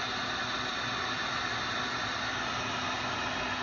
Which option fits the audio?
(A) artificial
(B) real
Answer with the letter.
B